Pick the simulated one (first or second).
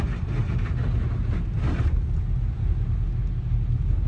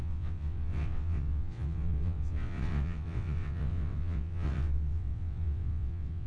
second